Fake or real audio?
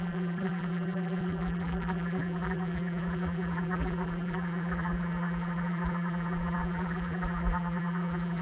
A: fake